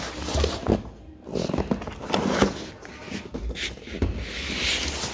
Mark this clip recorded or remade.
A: recorded